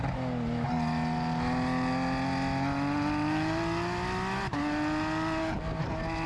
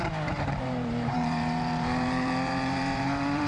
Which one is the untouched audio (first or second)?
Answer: first